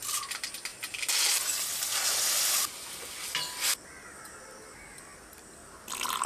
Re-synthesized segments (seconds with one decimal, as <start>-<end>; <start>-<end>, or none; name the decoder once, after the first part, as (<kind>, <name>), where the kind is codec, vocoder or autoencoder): none